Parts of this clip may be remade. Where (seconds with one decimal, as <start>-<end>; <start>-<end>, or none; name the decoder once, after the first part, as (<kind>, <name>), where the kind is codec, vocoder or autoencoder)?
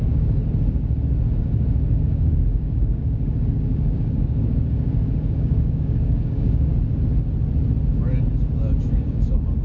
0.0-0.4 (codec, DAC); 1.4-6.7; 8.9-9.6